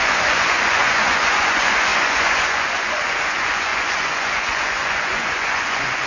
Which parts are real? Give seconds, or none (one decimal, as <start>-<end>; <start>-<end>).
none